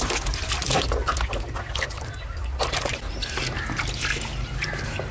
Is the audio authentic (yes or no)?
yes